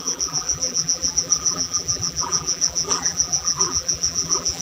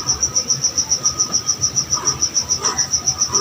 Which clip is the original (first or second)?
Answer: second